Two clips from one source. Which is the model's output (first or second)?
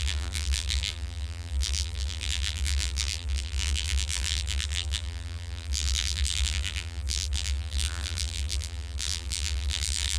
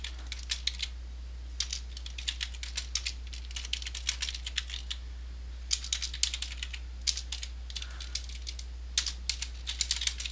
first